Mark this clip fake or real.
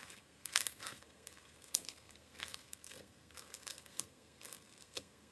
fake